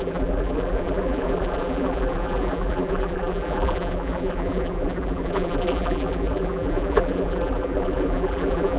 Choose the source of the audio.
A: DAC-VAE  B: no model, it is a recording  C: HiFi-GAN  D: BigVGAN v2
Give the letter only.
D